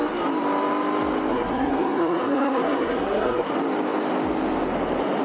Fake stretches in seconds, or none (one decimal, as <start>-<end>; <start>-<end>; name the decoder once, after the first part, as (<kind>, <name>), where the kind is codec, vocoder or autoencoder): 1.3-3.5 (codec, SNAC)